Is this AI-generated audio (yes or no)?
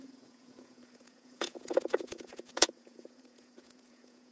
yes